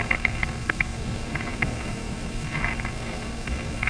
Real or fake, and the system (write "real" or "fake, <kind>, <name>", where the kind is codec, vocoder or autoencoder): fake, codec, SNAC